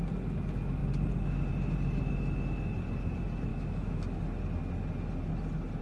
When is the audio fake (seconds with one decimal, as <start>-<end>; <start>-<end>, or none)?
3.5-4.2

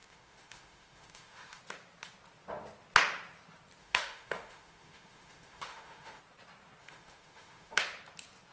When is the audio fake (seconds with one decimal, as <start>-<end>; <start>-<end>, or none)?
0.0-1.6; 3.8-6.2; 6.8-7.8

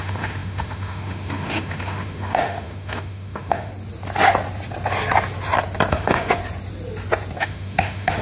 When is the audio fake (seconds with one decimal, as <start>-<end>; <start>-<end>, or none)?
0.0-3.7; 5.9-6.4; 7.4-8.2

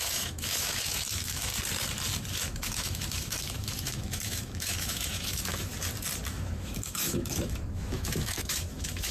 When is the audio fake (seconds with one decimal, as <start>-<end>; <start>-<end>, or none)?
0.0-1.5; 2.4-5.7; 6.3-9.1